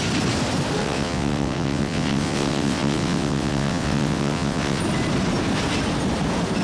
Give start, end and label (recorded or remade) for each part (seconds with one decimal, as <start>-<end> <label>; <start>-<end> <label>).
0.0-0.8 recorded; 0.8-4.8 remade; 4.8-6.6 recorded